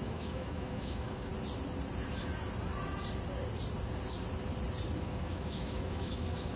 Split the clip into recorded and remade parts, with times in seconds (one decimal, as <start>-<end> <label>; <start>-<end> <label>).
0.0-1.3 remade; 1.3-5.0 recorded; 5.0-6.6 remade